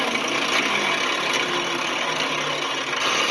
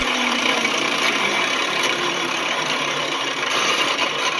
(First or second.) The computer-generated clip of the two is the second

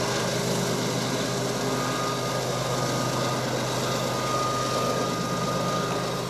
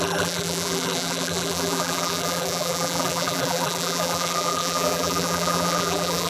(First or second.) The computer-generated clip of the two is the second